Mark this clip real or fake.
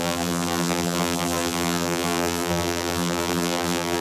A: fake